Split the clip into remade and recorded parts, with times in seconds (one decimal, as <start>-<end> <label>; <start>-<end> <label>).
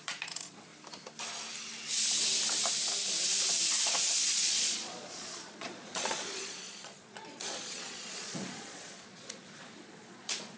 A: 0.0-0.7 remade; 0.7-4.1 recorded; 4.1-10.6 remade